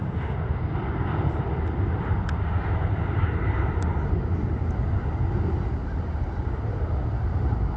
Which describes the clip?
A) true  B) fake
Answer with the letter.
A